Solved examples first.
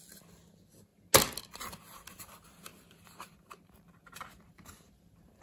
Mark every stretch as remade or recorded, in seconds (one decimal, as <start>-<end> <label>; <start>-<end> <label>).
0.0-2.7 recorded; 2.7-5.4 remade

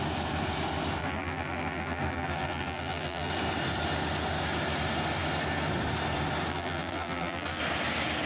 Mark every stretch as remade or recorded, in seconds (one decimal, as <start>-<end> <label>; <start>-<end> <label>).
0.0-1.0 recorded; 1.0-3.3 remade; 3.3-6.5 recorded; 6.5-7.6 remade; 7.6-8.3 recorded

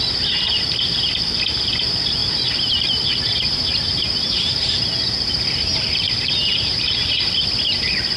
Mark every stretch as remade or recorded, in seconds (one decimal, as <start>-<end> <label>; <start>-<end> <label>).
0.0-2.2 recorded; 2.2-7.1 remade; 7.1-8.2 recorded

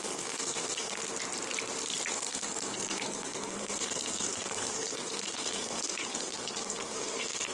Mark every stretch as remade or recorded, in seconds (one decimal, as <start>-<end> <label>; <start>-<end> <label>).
0.0-1.0 remade; 1.0-2.1 recorded; 2.1-7.5 remade